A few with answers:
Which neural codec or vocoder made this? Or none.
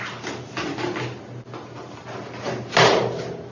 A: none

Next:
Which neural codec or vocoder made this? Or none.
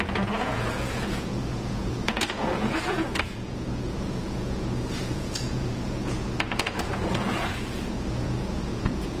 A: vocoder, Vocos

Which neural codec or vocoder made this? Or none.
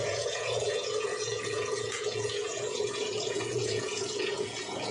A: vocoder, Vocos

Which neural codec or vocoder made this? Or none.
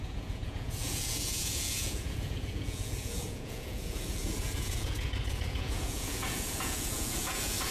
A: vocoder, Vocos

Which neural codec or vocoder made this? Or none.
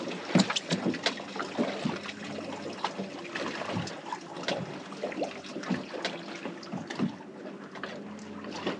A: none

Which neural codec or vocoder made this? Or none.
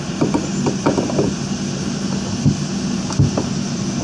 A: none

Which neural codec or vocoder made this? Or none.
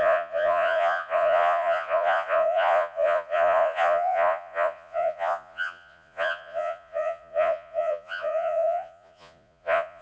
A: vocoder, Vocos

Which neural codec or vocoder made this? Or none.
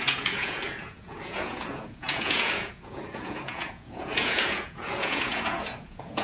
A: vocoder, Vocos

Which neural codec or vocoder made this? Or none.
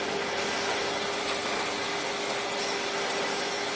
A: none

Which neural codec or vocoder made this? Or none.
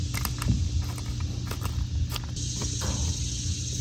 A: none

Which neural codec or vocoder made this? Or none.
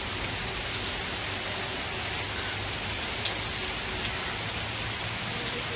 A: none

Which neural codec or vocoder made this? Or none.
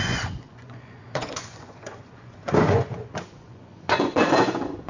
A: vocoder, Vocos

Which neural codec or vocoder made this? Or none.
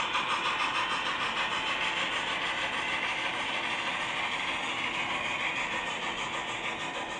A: none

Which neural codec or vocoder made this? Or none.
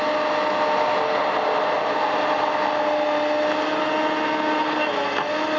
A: none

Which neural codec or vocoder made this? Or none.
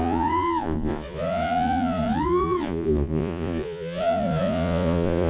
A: vocoder, Vocos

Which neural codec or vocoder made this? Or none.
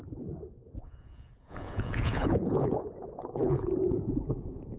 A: vocoder, Vocos